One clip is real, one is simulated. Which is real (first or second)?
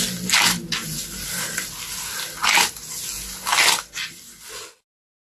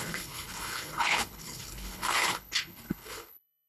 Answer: first